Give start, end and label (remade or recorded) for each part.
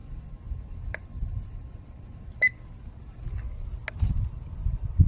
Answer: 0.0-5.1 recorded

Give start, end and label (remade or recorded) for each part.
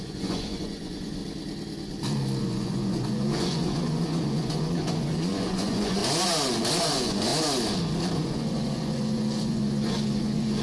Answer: 0.0-1.2 remade; 1.2-2.4 recorded; 2.4-6.0 remade; 6.0-6.7 recorded; 6.7-7.3 remade; 7.3-8.1 recorded; 8.1-10.6 remade